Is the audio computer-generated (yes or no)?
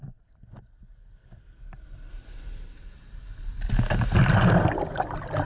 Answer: no